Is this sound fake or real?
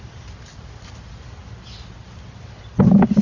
real